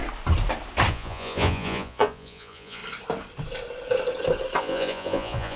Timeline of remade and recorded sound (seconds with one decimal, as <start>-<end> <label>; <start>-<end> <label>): 0.0-0.9 recorded; 0.9-2.8 remade; 2.8-4.6 recorded; 4.6-5.6 remade